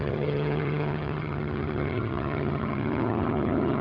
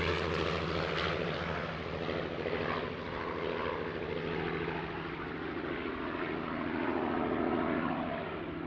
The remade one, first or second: first